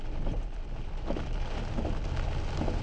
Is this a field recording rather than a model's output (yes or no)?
yes